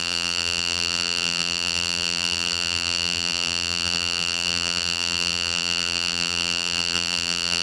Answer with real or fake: fake